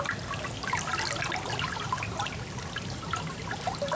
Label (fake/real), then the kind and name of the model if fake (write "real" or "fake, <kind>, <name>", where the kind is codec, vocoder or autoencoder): real